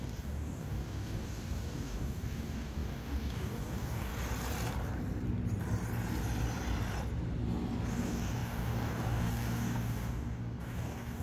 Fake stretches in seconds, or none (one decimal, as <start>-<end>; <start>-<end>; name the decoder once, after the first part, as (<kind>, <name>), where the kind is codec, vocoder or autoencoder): 0.0-4.1 (codec, DAC); 7.9-11.2